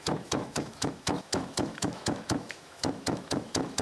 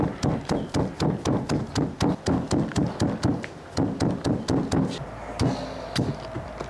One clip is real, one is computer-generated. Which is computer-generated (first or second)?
first